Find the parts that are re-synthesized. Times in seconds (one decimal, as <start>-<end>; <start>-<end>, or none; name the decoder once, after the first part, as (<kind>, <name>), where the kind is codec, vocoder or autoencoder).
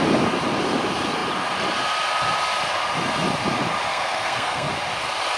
3.9-4.7 (codec, SNAC)